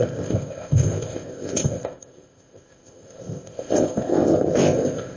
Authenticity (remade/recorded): remade